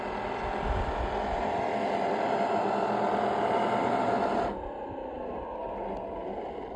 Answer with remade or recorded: recorded